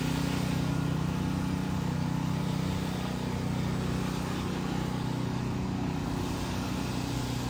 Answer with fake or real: real